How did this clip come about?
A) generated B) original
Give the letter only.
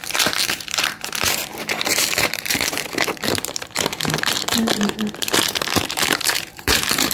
A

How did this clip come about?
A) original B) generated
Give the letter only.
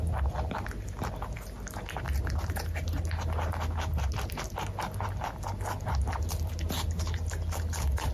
A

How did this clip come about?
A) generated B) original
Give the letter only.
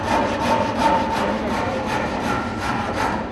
B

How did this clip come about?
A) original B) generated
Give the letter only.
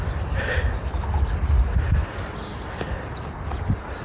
A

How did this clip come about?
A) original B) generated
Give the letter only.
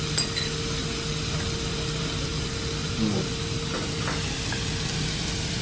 A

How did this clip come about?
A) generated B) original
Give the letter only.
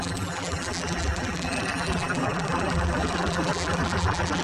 A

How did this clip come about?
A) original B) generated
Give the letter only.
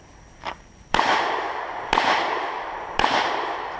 B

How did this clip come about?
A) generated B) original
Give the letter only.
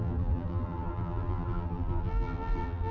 A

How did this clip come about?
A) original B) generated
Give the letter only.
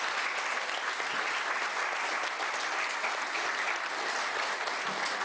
A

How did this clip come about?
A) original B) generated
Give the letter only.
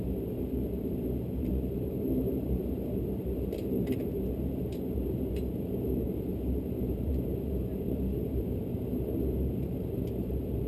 B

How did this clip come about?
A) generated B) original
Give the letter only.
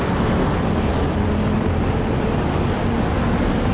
A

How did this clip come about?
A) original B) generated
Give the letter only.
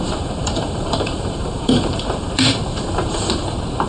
B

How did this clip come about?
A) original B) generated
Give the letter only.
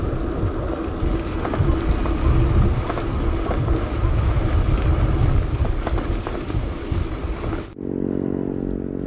A